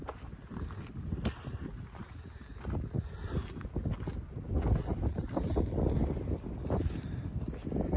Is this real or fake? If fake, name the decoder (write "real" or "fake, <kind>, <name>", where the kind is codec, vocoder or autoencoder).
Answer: real